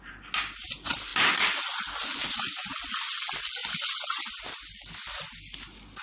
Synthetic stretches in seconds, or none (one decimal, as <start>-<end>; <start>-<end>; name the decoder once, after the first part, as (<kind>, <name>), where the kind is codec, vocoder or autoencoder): none